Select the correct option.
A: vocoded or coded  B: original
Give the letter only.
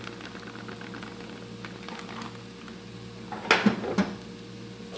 B